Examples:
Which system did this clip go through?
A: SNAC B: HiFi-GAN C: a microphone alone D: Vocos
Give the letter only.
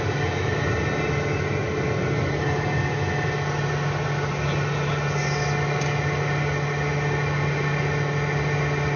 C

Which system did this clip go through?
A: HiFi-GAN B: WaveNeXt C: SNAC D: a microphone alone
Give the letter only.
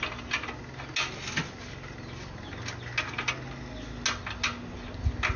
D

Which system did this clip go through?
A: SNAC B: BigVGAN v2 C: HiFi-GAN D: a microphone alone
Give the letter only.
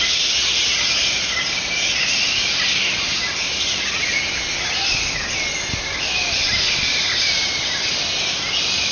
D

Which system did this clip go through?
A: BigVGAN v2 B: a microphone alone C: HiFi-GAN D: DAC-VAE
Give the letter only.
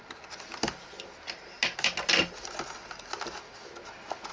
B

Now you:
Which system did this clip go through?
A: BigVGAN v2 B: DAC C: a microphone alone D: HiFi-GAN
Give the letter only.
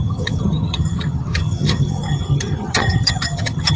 D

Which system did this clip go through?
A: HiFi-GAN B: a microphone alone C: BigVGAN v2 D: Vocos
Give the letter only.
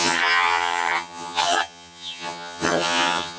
A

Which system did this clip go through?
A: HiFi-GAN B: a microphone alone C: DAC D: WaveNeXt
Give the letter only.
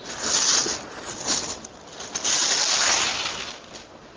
B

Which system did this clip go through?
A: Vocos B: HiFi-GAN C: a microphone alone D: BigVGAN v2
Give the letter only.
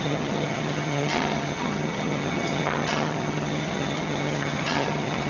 B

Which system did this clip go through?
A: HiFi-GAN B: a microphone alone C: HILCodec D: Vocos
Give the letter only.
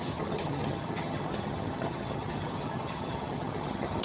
A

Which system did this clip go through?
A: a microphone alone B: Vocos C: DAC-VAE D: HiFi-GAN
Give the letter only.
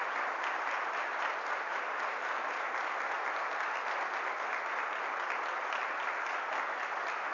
A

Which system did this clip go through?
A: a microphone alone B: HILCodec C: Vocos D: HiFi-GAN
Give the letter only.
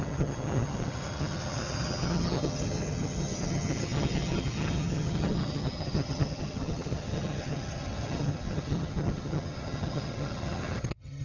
D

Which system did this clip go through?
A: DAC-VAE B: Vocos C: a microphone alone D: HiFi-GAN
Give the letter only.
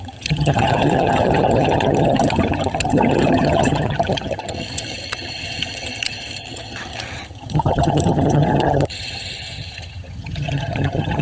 D